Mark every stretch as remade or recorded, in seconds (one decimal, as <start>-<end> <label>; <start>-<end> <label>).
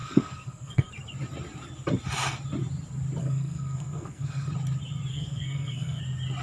0.0-0.9 remade; 0.9-3.2 recorded; 3.2-4.5 remade; 4.5-5.1 recorded; 5.1-6.0 remade; 6.0-6.4 recorded